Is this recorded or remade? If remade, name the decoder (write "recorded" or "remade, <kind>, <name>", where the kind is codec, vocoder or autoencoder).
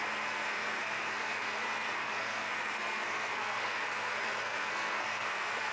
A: remade, codec, SNAC